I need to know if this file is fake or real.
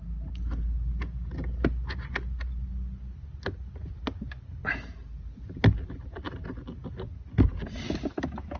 real